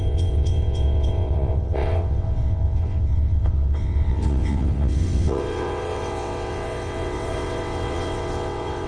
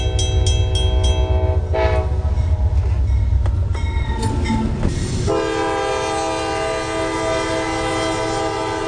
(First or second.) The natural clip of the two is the second